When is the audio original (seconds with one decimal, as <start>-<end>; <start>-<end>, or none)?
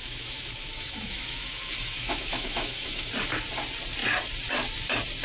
3.1-5.2